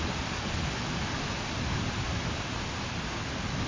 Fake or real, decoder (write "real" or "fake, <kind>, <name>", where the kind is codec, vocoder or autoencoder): real